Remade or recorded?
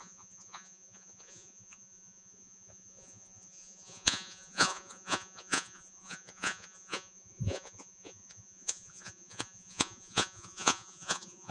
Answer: remade